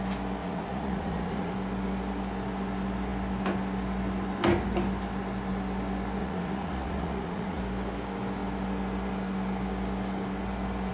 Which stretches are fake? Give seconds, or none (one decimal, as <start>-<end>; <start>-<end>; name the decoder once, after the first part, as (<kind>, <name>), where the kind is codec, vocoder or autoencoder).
0.4-1.5 (vocoder, Vocos); 6.2-7.6